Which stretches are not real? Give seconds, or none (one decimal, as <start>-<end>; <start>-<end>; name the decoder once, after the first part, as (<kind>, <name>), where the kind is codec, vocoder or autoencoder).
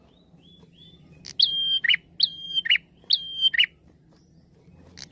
none